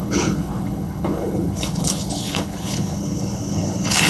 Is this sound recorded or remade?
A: remade